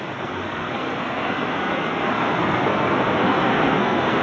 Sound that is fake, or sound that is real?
fake